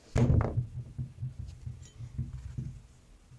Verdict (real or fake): real